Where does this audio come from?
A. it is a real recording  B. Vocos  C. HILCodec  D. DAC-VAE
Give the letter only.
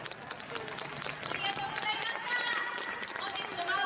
A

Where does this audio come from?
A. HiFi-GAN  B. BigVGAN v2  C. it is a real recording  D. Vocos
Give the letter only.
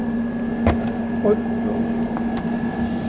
C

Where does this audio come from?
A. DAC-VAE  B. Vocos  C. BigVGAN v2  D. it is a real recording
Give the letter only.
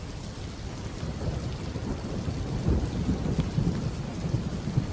D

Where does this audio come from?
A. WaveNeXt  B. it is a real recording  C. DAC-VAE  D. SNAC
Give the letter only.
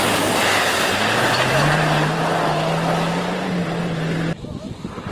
B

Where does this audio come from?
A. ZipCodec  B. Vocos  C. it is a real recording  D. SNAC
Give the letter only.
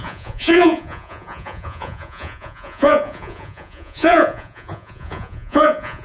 B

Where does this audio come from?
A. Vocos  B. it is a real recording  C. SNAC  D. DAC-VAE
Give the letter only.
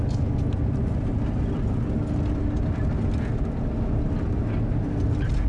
B